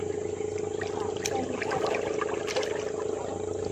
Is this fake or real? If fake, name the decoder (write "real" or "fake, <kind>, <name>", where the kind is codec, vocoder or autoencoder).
real